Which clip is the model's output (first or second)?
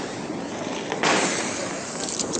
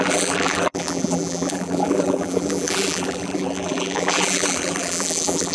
second